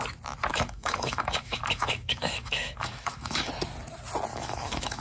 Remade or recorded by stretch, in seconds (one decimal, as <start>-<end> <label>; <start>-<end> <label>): 0.0-0.5 recorded; 0.5-3.5 remade; 3.5-4.3 recorded; 4.3-5.0 remade